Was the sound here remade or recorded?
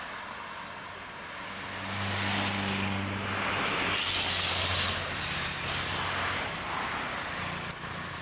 recorded